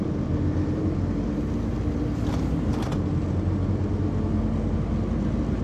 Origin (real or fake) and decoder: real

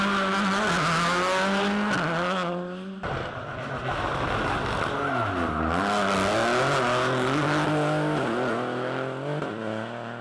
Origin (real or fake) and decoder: real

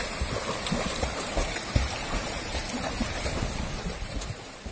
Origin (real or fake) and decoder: fake, vocoder, BigVGAN v2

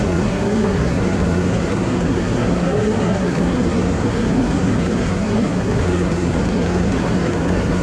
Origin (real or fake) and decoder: fake, codec, SNAC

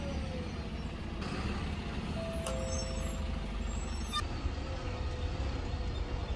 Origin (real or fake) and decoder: real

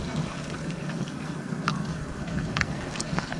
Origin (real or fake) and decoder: fake, codec, SNAC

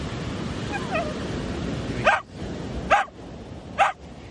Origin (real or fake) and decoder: real